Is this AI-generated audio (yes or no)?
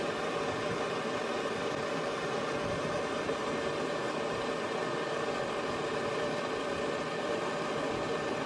no